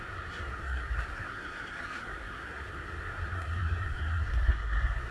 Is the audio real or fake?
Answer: fake